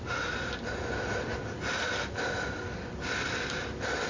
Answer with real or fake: real